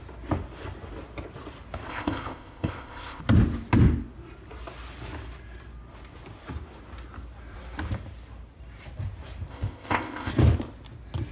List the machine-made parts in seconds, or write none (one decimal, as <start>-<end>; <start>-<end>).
1.9-3.2; 9.5-10.3